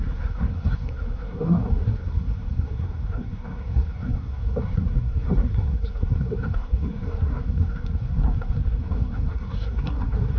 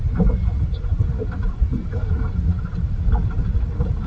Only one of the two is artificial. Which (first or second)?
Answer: first